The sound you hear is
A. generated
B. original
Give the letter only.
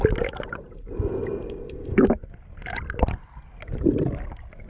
B